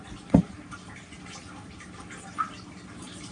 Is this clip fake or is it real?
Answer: real